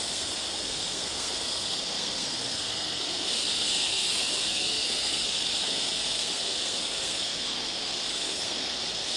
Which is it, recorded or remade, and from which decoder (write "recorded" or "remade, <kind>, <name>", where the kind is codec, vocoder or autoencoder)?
remade, codec, SNAC